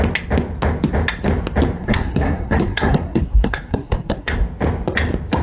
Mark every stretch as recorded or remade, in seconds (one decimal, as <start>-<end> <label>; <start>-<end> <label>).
0.0-1.8 recorded; 1.8-4.3 remade; 4.3-5.4 recorded